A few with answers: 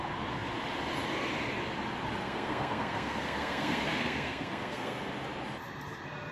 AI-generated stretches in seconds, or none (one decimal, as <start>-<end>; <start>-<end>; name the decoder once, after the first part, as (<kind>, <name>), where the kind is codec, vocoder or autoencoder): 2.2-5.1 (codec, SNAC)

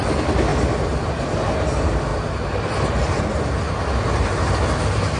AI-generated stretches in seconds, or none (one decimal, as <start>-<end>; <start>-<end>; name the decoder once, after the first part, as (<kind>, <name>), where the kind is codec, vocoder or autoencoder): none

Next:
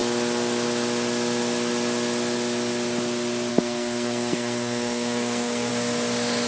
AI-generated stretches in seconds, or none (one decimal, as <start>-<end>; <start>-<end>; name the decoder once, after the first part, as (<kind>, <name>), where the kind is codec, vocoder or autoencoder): 3.5-5.7 (codec, SNAC)